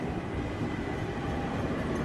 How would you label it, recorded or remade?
recorded